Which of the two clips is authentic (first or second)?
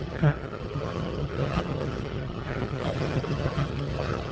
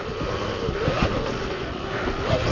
second